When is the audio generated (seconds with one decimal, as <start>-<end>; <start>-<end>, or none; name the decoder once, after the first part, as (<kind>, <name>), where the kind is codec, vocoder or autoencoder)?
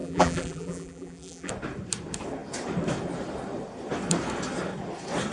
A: 0.0-1.5 (vocoder, BigVGAN v2)